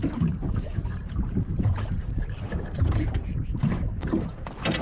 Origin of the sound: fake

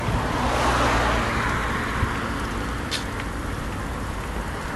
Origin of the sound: real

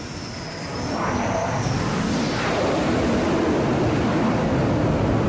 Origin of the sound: real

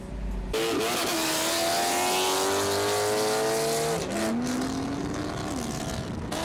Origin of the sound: real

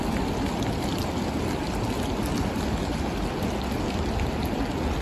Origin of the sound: real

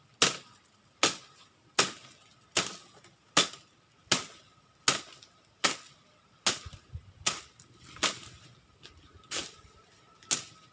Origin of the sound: real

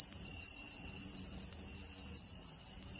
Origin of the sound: fake